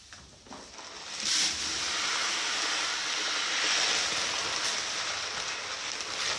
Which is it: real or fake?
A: real